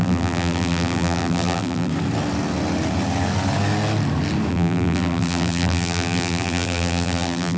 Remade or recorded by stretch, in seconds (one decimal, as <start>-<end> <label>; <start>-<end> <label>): 0.0-1.9 remade; 1.9-4.5 recorded; 4.5-7.6 remade